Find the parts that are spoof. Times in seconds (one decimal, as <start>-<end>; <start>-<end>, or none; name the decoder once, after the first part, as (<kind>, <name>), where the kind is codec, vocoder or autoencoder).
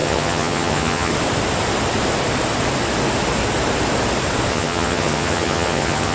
0.0-1.1 (vocoder, HiFi-GAN); 4.5-6.1